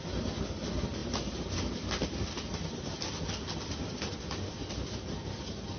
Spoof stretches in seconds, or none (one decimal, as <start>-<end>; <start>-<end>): none